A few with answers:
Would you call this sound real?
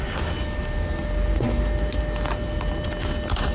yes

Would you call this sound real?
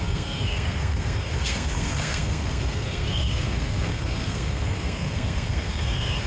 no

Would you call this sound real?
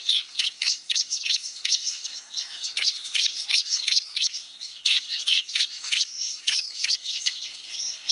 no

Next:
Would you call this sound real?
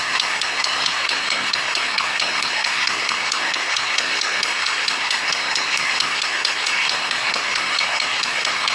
no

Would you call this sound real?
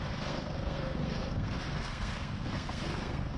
no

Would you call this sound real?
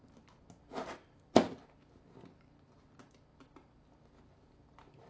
yes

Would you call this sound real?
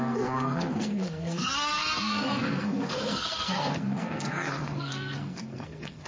no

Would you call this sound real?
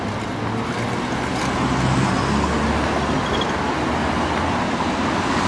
yes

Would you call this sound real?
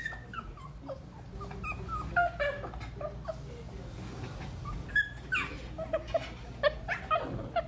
yes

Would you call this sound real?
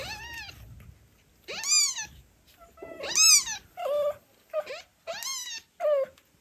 yes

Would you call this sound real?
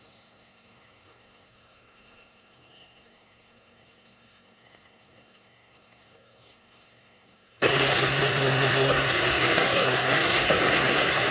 no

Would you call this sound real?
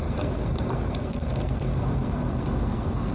no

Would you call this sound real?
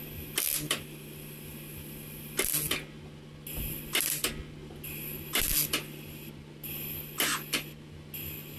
yes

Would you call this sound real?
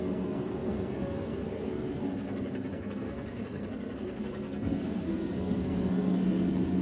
no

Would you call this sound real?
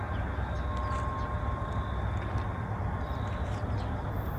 yes